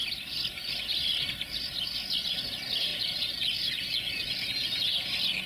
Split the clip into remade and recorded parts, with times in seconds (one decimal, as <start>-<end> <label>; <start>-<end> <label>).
0.0-5.5 recorded